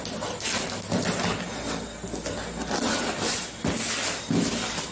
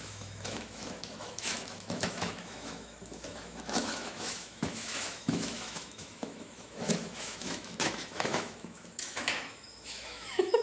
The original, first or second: first